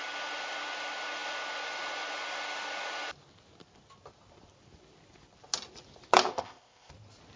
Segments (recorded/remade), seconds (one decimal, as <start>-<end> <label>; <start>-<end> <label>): 0.0-6.3 recorded; 6.3-6.9 remade; 6.9-7.4 recorded